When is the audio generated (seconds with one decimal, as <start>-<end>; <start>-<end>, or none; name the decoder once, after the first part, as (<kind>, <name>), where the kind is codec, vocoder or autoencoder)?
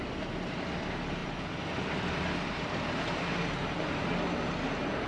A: 1.2-3.8 (vocoder, BigVGAN v2)